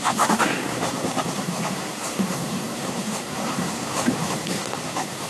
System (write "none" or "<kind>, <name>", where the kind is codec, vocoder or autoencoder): codec, SNAC